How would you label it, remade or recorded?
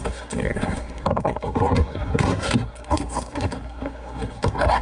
remade